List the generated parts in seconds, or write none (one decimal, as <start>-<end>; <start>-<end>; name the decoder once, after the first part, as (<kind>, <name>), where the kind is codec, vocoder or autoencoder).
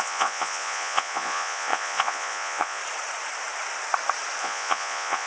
0.0-2.8 (vocoder, Vocos); 4.4-5.3